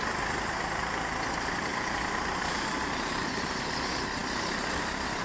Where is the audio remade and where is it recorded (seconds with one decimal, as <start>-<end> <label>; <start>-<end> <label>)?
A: 0.0-1.7 recorded; 1.7-3.7 remade; 3.7-5.2 recorded